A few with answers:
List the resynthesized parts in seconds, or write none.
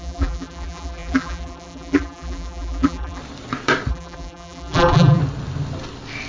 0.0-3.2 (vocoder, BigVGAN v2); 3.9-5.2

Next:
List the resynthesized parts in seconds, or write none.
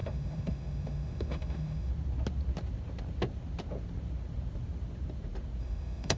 0.0-1.9 (autoencoder, DAC-VAE); 5.6-6.2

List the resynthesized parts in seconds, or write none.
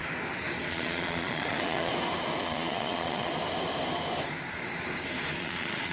0.7-1.9 (vocoder, Vocos); 2.4-3.3; 5.4-5.9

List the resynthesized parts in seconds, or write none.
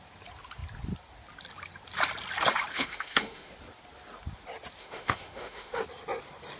2.7-3.5 (autoencoder, DAC-VAE); 4.8-5.8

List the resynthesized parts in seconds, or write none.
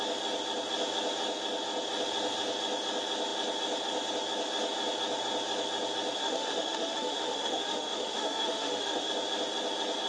6.2-9.1 (autoencoder, DAC-VAE)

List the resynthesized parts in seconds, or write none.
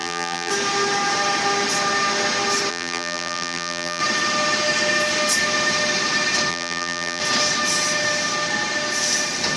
0.0-0.5 (vocoder, BigVGAN v2); 2.7-4.0; 6.5-7.2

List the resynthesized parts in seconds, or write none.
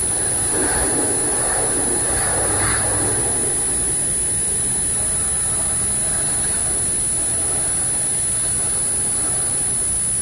none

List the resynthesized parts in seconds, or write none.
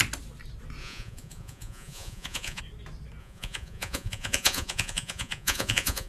0.8-2.6 (vocoder, Vocos); 3.2-6.1